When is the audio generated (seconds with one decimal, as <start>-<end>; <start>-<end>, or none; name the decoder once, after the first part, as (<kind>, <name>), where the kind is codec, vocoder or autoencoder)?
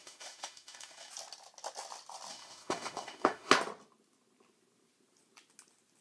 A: 0.0-1.1 (autoencoder, DAC-VAE); 2.3-3.5